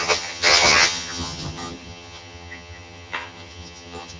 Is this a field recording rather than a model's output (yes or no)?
no